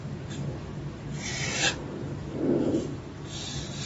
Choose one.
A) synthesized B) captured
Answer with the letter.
B